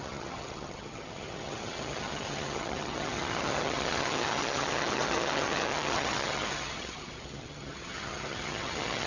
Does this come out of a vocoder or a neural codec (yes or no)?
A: yes